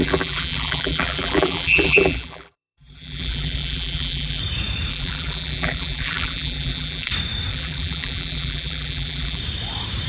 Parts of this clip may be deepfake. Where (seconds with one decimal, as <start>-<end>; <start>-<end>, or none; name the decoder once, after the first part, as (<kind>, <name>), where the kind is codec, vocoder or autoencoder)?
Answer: 0.0-4.4 (vocoder, BigVGAN v2); 4.9-7.1; 7.5-9.4